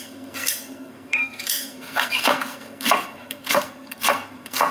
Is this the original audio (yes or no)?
no